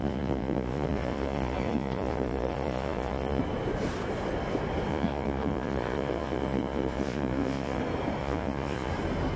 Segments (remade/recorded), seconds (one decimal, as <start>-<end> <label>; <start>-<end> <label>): 0.0-3.4 remade; 3.4-4.9 recorded; 4.9-7.8 remade; 7.8-8.2 recorded; 8.2-8.9 remade; 8.9-9.4 recorded